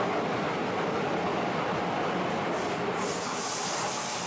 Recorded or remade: recorded